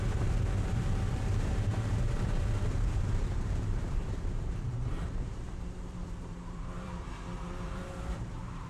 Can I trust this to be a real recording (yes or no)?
no